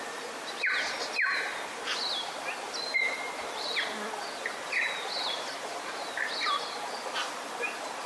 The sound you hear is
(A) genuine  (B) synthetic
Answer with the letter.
A